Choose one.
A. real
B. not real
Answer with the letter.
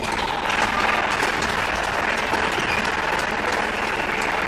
A